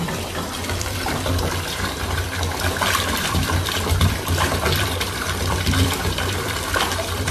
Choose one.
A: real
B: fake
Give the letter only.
B